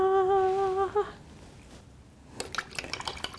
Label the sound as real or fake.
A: real